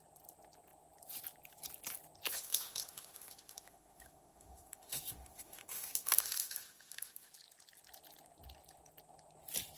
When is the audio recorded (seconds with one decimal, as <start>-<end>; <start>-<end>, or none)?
0.0-2.3; 7.3-9.8